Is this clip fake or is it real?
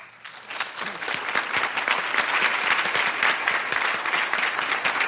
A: real